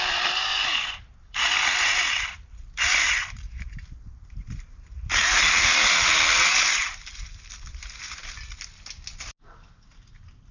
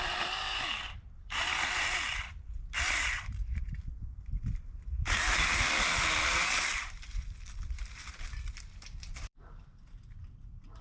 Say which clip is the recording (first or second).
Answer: first